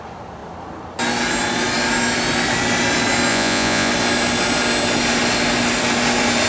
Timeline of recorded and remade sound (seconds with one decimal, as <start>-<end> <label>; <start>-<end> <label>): 0.0-3.3 recorded; 3.3-3.9 remade; 3.9-6.5 recorded